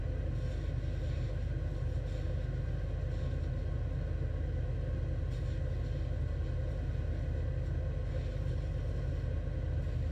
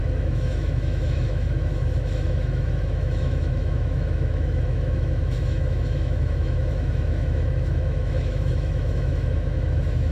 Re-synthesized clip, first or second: second